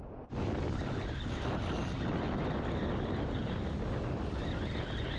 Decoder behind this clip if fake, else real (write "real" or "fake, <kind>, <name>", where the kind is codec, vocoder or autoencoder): real